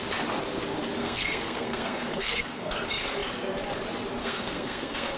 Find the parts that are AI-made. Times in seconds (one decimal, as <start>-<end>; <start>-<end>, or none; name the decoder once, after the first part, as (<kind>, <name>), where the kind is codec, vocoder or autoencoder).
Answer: 1.0-2.8 (codec, SNAC); 4.2-5.2